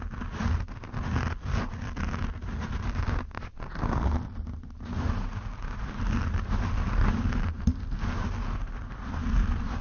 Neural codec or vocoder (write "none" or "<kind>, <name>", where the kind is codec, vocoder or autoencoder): none